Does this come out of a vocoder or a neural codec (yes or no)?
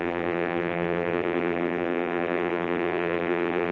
yes